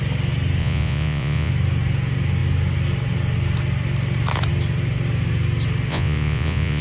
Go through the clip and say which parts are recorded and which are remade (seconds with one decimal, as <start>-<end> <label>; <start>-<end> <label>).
0.0-0.6 recorded; 0.6-1.5 remade; 1.5-5.9 recorded; 5.9-6.8 remade